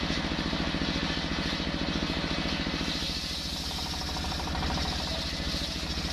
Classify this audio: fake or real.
real